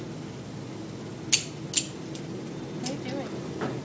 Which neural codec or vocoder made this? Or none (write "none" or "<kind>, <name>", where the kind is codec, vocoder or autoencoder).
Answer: none